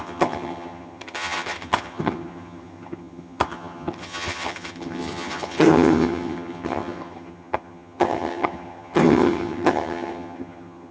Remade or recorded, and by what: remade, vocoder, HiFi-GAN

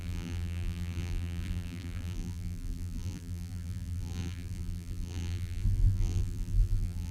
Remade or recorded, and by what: remade, vocoder, BigVGAN v2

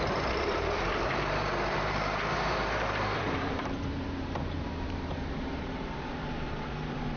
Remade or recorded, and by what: remade, vocoder, BigVGAN v2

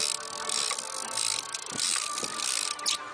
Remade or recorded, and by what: recorded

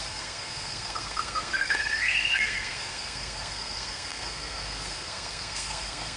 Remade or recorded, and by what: remade, codec, SNAC